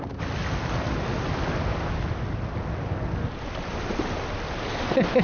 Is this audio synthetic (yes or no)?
no